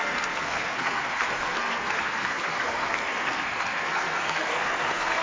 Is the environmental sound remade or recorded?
remade